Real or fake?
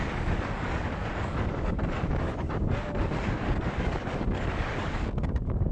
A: fake